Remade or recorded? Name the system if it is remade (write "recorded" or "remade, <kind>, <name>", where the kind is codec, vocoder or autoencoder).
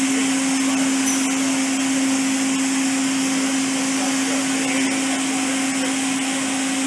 recorded